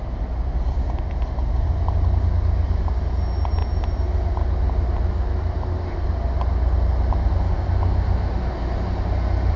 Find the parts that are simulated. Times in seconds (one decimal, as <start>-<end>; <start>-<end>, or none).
none